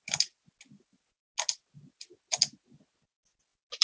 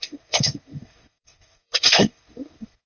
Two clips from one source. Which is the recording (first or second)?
first